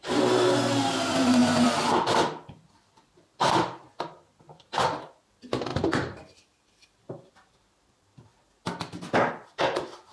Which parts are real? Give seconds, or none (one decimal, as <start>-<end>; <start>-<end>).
1.4-1.9; 8.3-9.3